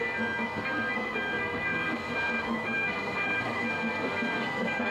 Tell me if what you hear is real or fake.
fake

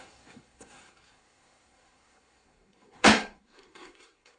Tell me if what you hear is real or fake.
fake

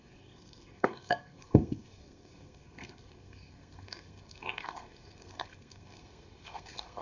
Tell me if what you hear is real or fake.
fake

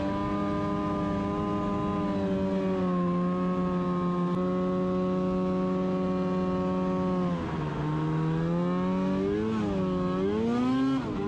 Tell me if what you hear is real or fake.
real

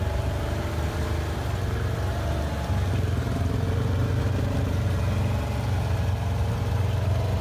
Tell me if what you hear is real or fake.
real